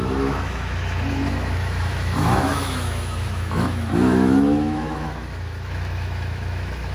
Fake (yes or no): yes